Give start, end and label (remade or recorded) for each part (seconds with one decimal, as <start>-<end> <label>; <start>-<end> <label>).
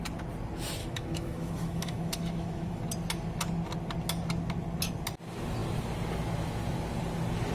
0.0-0.8 recorded; 0.8-2.8 remade; 2.8-7.5 recorded